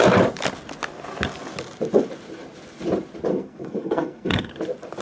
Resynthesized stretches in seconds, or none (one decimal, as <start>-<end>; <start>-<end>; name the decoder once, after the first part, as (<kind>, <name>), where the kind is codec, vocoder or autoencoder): 3.3-4.5 (codec, SNAC)